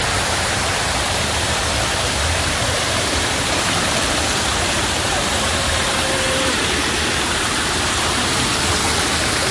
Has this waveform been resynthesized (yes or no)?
yes